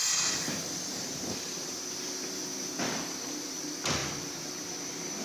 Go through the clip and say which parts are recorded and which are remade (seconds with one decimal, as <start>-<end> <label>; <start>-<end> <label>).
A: 0.0-2.4 remade; 2.4-4.0 recorded; 4.0-5.2 remade